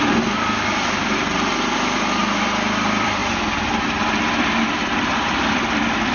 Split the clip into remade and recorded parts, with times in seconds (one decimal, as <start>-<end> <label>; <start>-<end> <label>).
0.0-1.5 remade; 1.5-2.2 recorded; 2.2-3.2 remade; 3.2-3.8 recorded; 3.8-6.1 remade